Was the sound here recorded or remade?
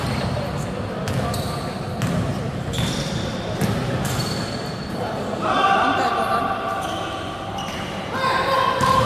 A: remade